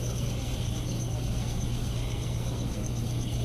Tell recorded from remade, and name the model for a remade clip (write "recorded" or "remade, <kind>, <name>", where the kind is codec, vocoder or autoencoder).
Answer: remade, codec, SNAC